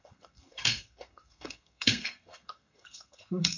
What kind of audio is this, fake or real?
fake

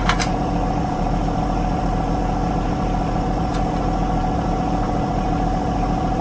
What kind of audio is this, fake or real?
fake